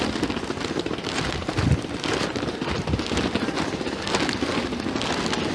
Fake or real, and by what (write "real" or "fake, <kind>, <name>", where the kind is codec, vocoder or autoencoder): real